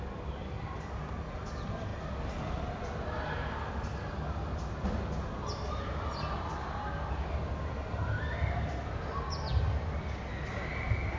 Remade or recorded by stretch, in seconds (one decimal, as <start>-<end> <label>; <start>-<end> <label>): 0.0-11.2 recorded